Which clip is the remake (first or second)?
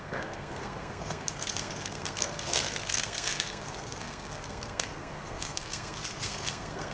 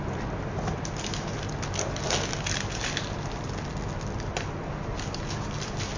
first